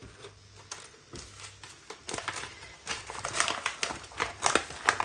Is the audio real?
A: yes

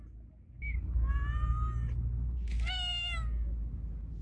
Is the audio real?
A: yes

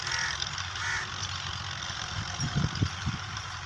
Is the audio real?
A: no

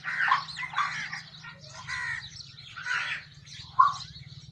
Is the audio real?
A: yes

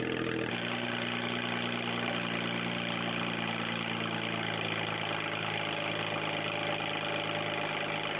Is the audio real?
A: yes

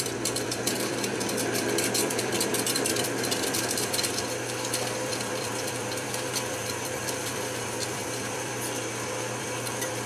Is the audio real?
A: no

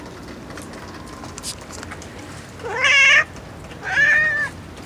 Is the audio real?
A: yes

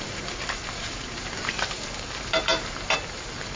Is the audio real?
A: no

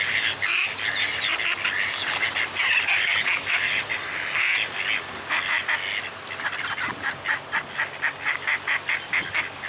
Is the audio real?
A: yes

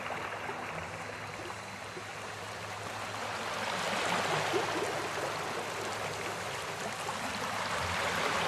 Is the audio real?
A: yes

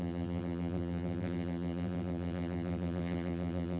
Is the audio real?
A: no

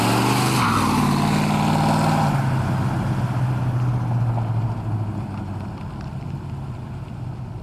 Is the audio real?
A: yes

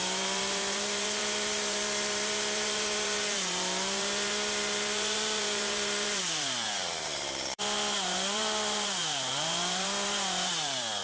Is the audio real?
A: no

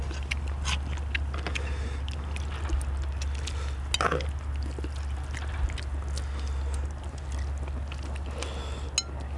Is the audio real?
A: yes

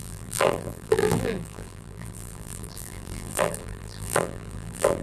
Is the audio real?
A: no